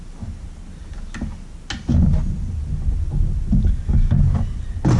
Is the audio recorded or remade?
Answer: recorded